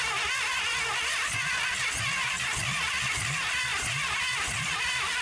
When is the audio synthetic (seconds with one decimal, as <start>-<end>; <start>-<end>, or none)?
3.7-4.8